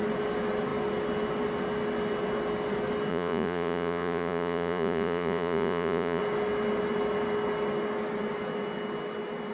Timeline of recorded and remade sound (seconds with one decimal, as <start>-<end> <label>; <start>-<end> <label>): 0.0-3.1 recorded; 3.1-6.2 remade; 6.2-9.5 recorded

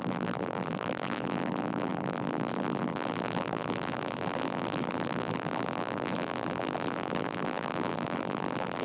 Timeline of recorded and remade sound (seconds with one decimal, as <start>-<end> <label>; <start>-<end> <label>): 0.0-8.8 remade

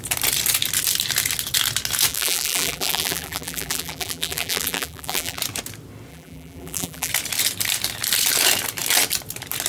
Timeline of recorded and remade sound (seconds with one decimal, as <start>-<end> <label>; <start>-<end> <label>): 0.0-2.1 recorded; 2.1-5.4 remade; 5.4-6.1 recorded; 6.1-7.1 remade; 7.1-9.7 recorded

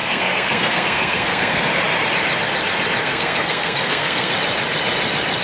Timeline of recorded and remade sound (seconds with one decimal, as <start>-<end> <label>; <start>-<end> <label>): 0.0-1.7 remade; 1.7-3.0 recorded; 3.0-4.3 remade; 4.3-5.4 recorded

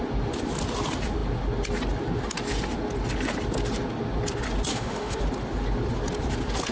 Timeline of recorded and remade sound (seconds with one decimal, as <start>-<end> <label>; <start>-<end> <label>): 0.0-4.7 recorded; 4.7-5.2 remade; 5.2-6.7 recorded

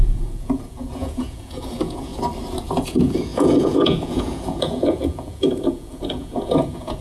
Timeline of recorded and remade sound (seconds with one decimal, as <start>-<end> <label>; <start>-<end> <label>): 0.0-2.1 remade; 2.1-2.7 recorded; 2.7-7.0 remade